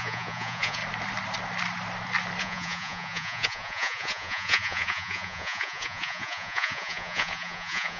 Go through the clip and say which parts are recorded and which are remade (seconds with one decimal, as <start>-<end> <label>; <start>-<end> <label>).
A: 0.0-0.8 remade; 0.8-2.4 recorded; 2.4-8.0 remade